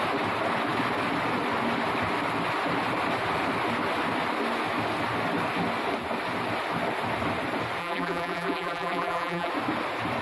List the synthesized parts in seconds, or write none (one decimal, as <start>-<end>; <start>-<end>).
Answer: 7.8-9.5